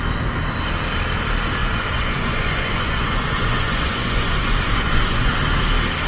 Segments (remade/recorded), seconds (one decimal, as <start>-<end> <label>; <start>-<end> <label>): 0.0-1.6 recorded; 1.6-5.3 remade; 5.3-6.1 recorded